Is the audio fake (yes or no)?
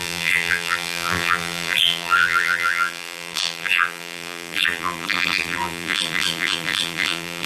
yes